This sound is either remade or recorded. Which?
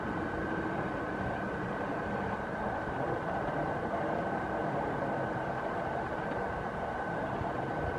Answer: remade